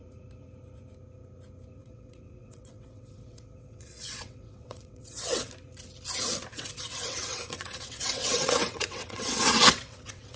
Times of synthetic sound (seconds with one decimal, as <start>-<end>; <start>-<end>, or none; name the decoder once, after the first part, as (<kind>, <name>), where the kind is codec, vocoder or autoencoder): 1.8-5.5 (vocoder, WaveNeXt); 6.5-10.4